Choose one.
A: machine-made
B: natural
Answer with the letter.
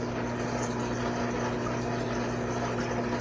B